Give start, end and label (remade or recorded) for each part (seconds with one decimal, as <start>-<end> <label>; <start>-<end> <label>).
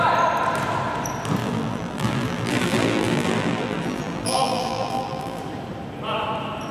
0.0-1.4 recorded; 1.4-5.4 remade; 5.4-6.7 recorded